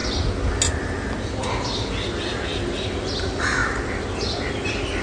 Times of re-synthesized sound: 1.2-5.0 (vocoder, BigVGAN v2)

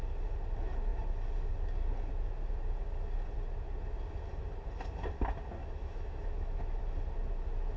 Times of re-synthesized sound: 5.6-6.8 (autoencoder, DAC-VAE)

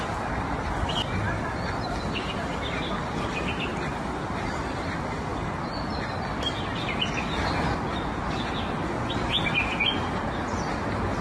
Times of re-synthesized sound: none

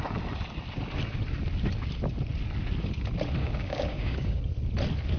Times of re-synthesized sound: 3.4-4.4 (codec, DAC)

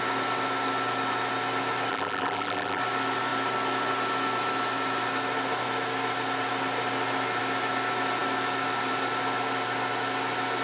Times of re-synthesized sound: 1.9-2.8 (vocoder, BigVGAN v2)

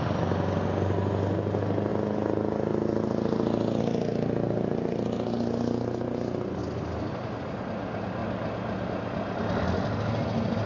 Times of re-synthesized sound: none

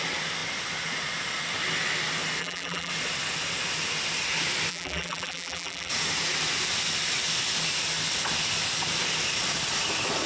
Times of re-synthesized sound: 2.4-2.9 (vocoder, BigVGAN v2); 4.7-5.9

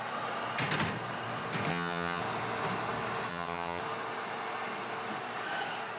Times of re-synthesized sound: 1.7-2.2 (vocoder, HiFi-GAN); 3.3-3.8